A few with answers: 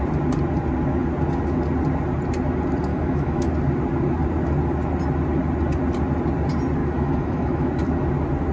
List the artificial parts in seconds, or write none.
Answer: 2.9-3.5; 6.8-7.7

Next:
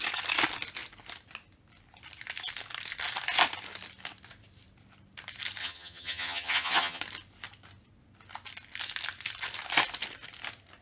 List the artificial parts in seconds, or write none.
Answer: 5.6-7.0

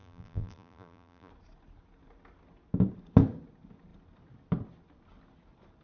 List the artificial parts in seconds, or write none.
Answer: 0.0-1.3

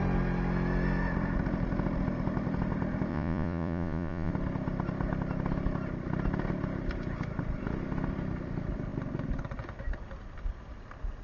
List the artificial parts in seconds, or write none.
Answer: 3.1-4.3

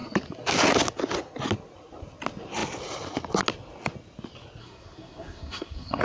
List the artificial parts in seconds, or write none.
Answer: 4.6-6.0

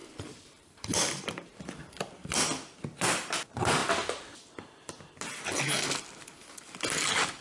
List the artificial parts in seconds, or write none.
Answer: 0.0-1.7

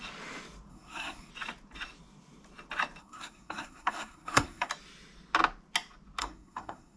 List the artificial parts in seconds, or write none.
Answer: 0.7-1.3; 3.0-4.7; 6.2-7.0

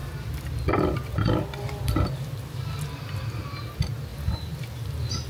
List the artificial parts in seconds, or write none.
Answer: none